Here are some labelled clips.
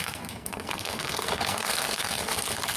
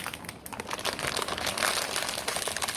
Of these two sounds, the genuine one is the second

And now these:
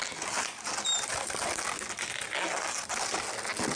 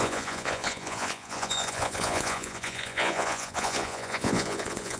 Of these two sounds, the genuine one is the first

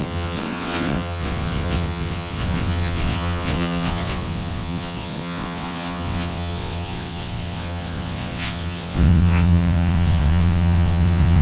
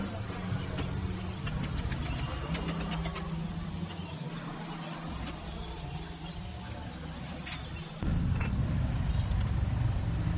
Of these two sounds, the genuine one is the second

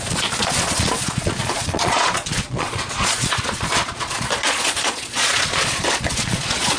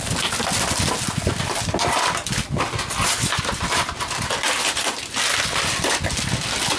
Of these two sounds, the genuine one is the second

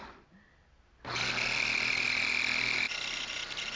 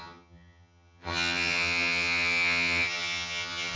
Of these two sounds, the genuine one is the first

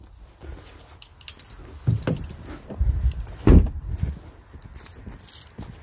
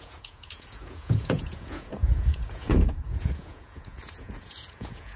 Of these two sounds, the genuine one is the first